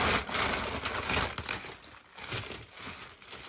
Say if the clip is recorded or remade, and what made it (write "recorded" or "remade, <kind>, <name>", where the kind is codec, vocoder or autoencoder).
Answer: recorded